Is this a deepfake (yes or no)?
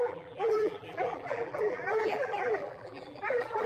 yes